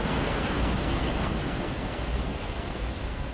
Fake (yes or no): yes